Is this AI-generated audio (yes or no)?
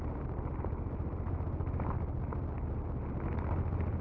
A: no